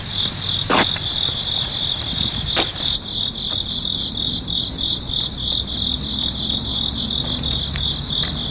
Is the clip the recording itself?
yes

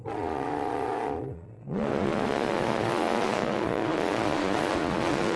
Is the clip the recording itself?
no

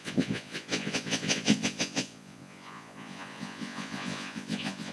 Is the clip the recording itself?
no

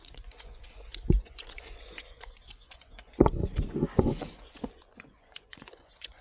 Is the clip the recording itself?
no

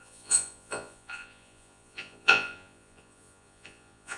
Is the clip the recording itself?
no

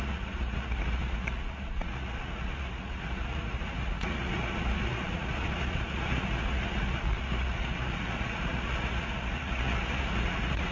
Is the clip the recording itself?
no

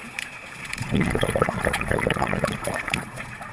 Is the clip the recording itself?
no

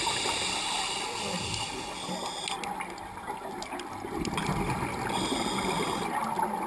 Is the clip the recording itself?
yes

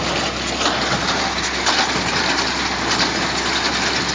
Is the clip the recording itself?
yes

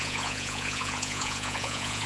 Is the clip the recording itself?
no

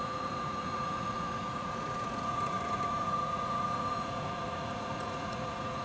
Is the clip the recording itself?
no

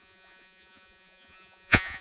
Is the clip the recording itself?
no